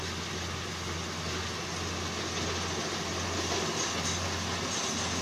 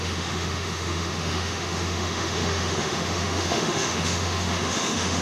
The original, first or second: first